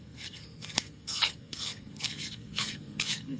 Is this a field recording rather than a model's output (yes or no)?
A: no